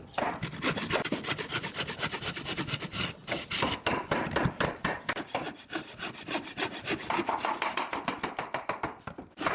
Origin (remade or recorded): recorded